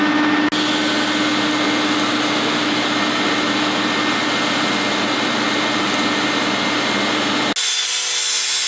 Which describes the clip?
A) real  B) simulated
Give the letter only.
A